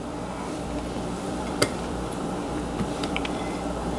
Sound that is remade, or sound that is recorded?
remade